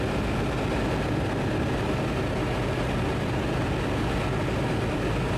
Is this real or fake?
real